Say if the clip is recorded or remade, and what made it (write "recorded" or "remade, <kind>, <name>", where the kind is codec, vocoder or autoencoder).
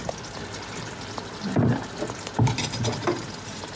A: recorded